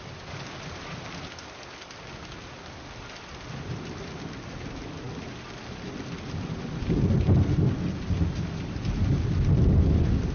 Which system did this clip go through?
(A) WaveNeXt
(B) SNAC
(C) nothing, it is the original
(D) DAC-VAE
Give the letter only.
C